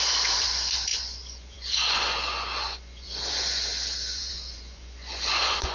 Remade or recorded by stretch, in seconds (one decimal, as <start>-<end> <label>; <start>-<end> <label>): 0.0-5.7 remade